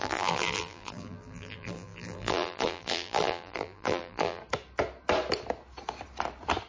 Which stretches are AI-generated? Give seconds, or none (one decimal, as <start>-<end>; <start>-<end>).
0.0-4.4